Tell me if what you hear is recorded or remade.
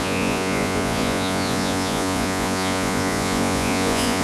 remade